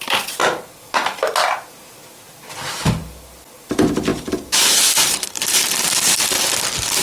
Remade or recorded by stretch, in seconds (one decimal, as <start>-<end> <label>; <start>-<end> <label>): 0.0-4.1 recorded; 4.1-6.2 remade; 6.2-7.0 recorded